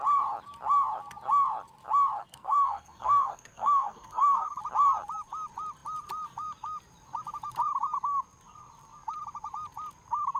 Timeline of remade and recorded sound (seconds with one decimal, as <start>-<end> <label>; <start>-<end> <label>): 0.0-2.2 recorded; 2.2-4.6 remade; 4.6-10.4 recorded